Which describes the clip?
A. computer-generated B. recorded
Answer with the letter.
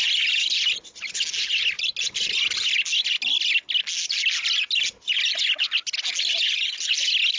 B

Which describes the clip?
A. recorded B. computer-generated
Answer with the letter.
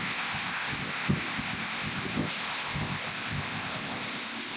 B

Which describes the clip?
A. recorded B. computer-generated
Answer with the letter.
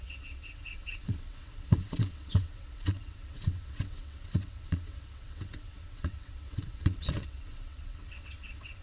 B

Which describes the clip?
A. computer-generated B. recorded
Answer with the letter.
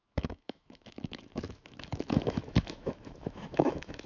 A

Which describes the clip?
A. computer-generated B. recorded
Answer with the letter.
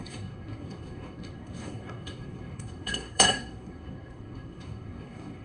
A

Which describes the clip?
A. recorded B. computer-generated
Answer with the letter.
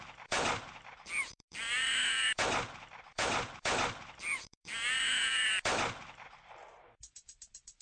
B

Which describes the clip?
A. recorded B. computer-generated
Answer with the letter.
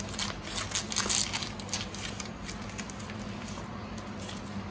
A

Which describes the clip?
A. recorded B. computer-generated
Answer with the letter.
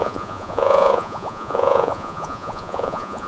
B